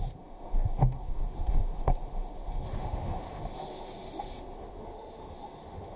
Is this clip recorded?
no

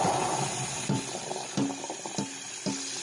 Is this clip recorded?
yes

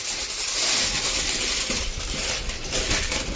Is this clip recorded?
yes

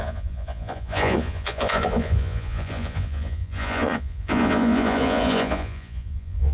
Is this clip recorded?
no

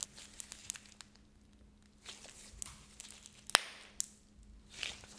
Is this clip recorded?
yes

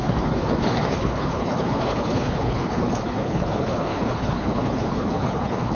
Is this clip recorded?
no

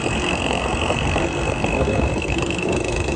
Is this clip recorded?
no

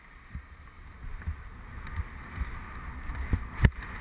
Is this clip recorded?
yes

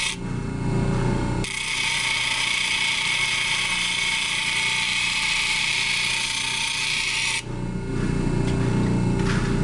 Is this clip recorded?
yes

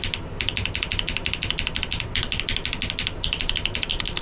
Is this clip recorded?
yes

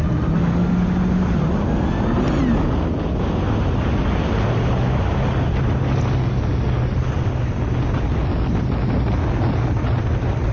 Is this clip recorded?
yes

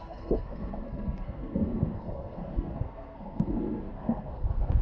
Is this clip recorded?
no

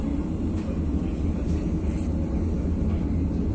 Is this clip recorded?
yes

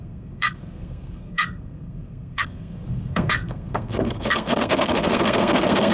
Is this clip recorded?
no